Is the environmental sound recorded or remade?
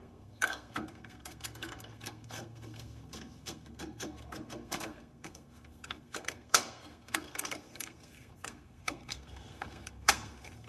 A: remade